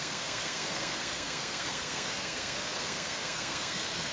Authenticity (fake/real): fake